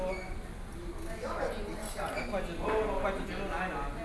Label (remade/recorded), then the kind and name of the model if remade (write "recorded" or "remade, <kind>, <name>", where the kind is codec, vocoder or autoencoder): recorded